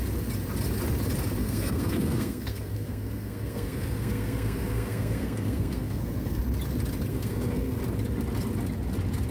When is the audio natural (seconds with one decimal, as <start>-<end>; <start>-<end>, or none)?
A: 0.0-1.4; 6.4-7.1; 7.8-9.3